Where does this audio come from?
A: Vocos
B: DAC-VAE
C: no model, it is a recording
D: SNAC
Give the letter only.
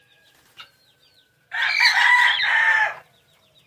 C